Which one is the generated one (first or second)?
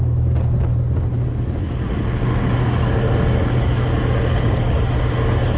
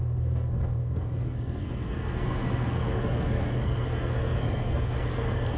second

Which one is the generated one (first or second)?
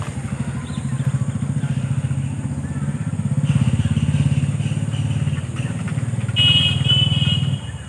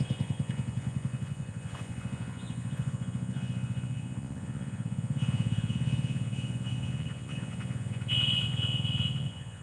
second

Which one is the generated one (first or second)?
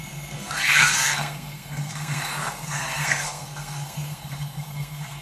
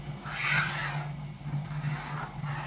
first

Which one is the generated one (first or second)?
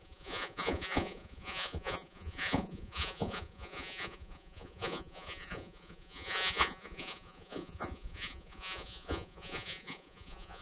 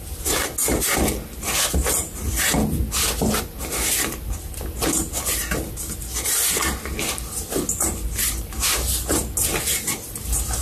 first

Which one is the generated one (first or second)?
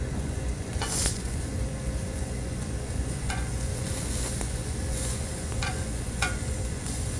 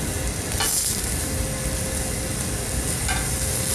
first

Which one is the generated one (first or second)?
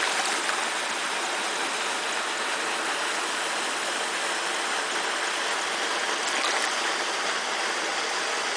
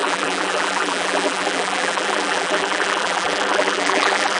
second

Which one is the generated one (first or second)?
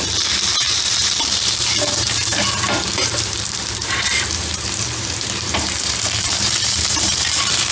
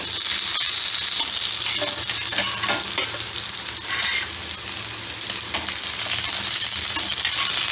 first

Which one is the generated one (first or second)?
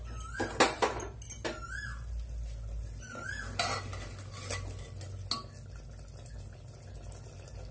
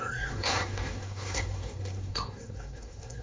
second